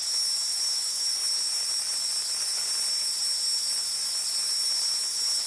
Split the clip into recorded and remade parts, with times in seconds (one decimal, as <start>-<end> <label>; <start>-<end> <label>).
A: 0.0-5.5 recorded